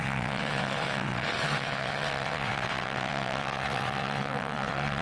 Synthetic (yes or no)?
yes